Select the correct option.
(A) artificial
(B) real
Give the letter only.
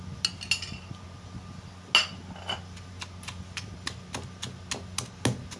B